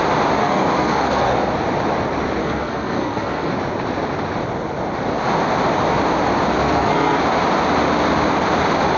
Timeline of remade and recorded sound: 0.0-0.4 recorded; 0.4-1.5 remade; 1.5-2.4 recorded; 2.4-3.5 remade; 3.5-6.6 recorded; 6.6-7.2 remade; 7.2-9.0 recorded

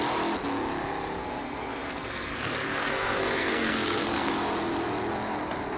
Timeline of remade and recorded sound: 0.0-1.2 recorded; 1.2-4.3 remade; 4.3-5.8 recorded